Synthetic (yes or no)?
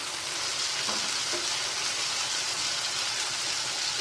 no